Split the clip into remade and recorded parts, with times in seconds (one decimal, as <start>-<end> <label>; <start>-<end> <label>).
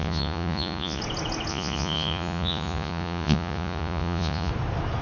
0.0-1.0 remade; 1.0-1.5 recorded; 1.5-4.5 remade; 4.5-5.0 recorded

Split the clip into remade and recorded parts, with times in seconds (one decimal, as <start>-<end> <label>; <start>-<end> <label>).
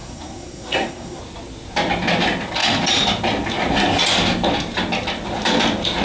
0.0-1.2 remade; 1.2-6.0 recorded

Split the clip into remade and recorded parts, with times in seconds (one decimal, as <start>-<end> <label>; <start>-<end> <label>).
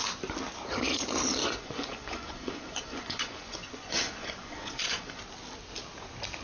0.0-1.4 recorded; 1.4-5.2 remade; 5.2-6.4 recorded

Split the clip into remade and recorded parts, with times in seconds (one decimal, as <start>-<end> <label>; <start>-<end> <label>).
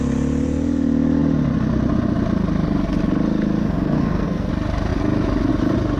0.0-3.6 recorded; 3.6-4.5 remade; 4.5-6.0 recorded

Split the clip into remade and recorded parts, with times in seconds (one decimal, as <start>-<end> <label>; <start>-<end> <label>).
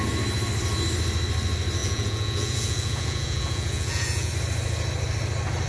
0.0-1.8 recorded; 1.8-4.3 remade; 4.3-5.7 recorded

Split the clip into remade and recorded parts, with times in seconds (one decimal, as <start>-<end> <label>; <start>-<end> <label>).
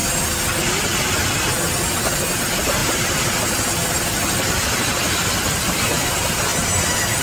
0.0-2.8 recorded; 2.8-6.1 remade; 6.1-6.5 recorded; 6.5-7.2 remade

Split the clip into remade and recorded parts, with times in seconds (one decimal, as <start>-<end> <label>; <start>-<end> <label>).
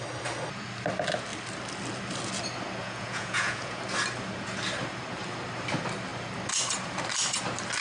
0.0-2.8 recorded; 2.8-3.8 remade; 3.8-7.8 recorded